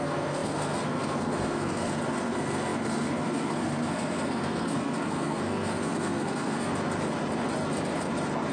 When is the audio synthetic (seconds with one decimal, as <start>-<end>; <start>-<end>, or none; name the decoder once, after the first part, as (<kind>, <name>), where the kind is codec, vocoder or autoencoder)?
0.0-6.7 (codec, SNAC)